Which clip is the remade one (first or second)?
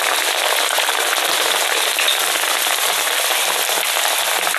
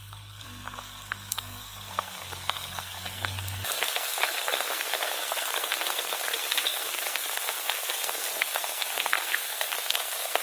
second